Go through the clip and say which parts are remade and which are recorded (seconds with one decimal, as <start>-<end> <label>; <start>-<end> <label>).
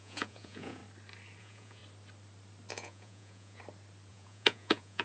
0.0-0.8 remade; 0.8-1.4 recorded; 1.4-1.8 remade; 1.8-2.7 recorded; 2.7-3.6 remade; 3.6-4.1 recorded; 4.1-5.0 remade